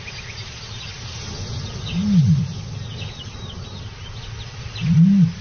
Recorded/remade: recorded